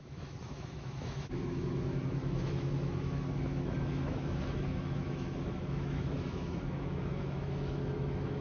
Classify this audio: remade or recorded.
remade